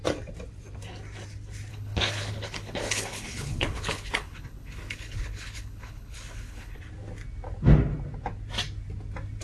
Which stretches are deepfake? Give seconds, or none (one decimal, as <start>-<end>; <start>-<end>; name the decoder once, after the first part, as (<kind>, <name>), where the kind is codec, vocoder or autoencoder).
1.7-6.8 (codec, HILCodec)

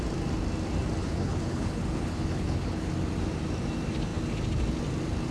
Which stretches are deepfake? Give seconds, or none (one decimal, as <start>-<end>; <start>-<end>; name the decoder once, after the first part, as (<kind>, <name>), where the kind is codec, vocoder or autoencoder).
1.0-2.9 (codec, HILCodec)